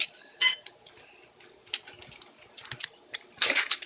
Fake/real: real